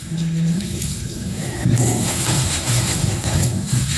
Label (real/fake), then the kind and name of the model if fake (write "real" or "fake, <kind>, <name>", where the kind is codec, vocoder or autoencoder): fake, codec, SNAC